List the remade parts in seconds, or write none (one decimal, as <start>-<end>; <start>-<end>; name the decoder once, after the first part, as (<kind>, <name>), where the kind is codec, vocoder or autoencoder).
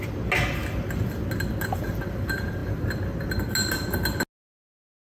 none